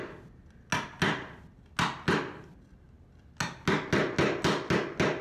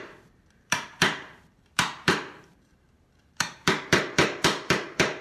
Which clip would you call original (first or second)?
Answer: first